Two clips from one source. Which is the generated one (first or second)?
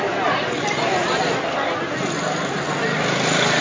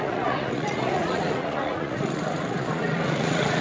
second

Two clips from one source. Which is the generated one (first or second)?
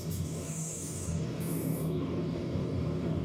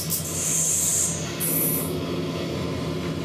first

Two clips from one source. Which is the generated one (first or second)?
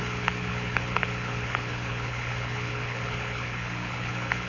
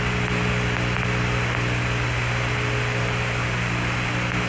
first